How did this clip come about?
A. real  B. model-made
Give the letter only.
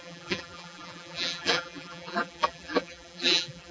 B